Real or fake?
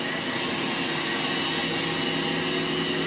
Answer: real